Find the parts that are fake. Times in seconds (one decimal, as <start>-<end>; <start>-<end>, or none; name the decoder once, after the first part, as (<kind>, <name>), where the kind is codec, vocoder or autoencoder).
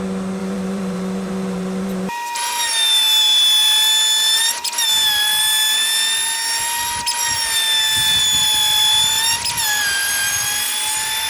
0.4-2.6 (vocoder, BigVGAN v2)